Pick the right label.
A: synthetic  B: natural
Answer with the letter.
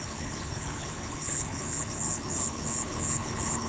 A